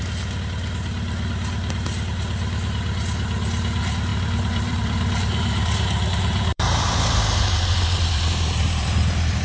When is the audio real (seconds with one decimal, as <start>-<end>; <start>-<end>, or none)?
0.0-4.1